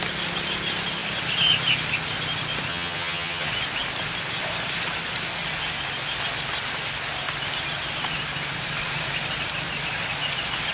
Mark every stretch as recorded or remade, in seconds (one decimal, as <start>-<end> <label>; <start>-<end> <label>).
0.0-2.7 recorded; 2.7-3.5 remade; 3.5-10.7 recorded